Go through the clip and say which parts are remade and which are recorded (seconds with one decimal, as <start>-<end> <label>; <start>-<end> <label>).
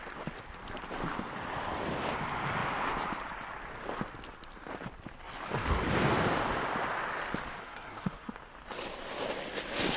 0.0-7.6 recorded; 7.6-8.3 remade; 8.3-10.0 recorded